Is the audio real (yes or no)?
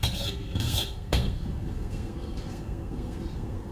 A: no